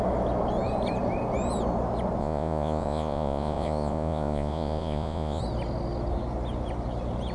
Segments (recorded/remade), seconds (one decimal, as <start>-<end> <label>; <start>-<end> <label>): 0.0-2.2 recorded; 2.2-5.4 remade; 5.4-7.3 recorded